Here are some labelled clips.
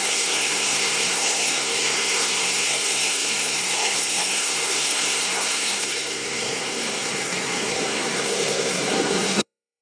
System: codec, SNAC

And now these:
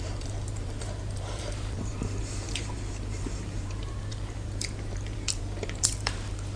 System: vocoder, BigVGAN v2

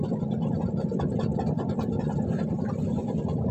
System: vocoder, BigVGAN v2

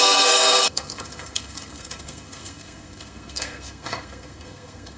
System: codec, SNAC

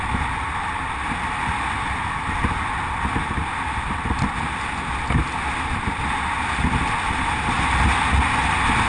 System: none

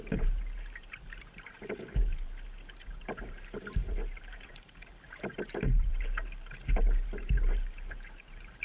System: vocoder, BigVGAN v2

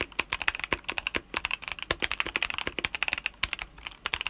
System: none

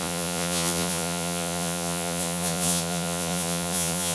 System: vocoder, Vocos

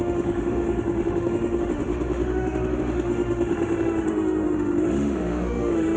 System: autoencoder, DAC-VAE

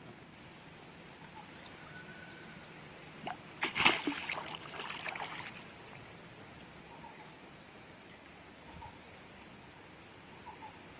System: none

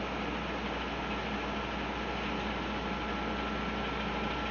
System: none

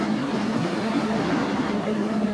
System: codec, SNAC